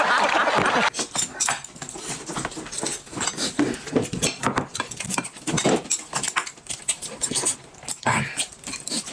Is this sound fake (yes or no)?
no